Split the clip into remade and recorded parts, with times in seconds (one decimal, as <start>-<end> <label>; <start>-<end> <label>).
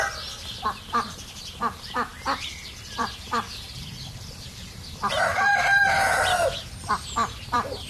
0.0-2.1 remade; 2.1-2.6 recorded; 2.6-5.5 remade; 5.5-7.0 recorded; 7.0-7.9 remade